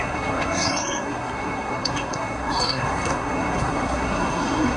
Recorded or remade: remade